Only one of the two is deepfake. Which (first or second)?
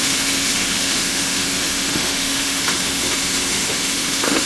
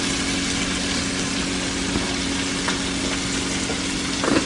first